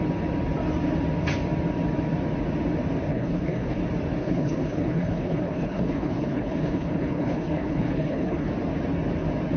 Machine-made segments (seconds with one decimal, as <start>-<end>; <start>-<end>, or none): 3.1-3.8; 4.2-8.5

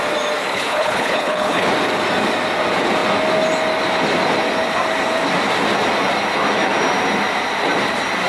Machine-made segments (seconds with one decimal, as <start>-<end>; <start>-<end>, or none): 0.5-1.7

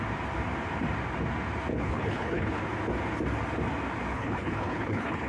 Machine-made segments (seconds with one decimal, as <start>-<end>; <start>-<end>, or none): 1.7-2.6; 4.1-5.3

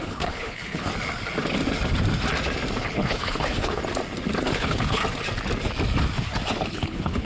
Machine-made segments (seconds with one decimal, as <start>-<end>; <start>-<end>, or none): 0.0-0.9; 2.8-3.8; 4.4-5.0; 6.7-7.3

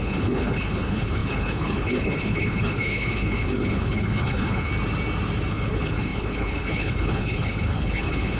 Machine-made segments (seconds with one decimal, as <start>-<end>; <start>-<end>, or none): 0.0-4.7; 5.5-8.4

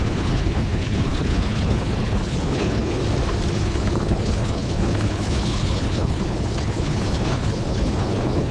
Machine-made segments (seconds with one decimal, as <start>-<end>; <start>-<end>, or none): 0.0-3.0; 3.5-8.5

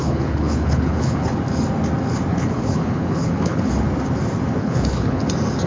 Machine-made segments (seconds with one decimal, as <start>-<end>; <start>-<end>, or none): 0.0-1.4; 2.3-3.7; 4.6-5.2